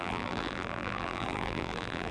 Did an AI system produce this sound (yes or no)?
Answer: yes